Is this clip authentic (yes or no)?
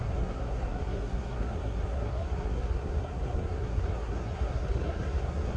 no